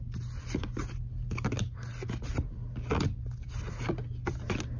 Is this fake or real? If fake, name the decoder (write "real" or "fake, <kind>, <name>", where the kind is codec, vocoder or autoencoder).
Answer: real